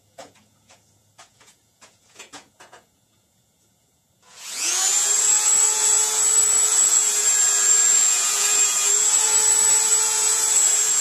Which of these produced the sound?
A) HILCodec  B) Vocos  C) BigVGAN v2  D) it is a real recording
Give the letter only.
B